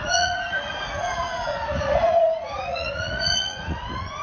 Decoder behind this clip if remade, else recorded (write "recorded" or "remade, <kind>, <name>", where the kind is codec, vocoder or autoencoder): remade, vocoder, Vocos